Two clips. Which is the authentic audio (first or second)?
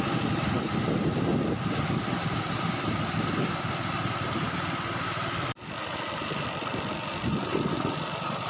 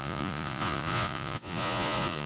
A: first